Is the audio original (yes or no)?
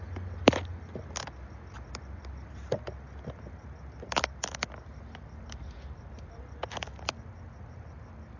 yes